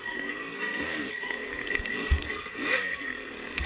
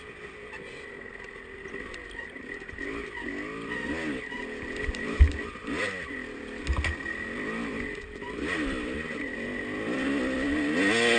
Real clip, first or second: second